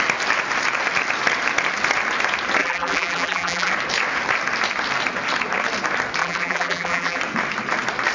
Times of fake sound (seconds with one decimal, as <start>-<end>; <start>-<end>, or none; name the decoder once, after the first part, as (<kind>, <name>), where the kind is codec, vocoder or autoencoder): 2.6-3.7 (vocoder, BigVGAN v2); 6.2-7.2